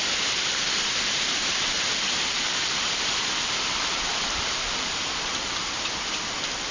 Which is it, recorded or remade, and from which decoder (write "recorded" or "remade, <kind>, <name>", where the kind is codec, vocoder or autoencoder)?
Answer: remade, vocoder, BigVGAN v2